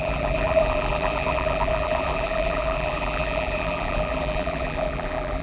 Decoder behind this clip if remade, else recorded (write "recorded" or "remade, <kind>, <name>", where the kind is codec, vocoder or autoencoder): remade, vocoder, BigVGAN v2